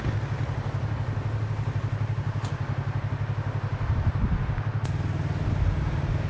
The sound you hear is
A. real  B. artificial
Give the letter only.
A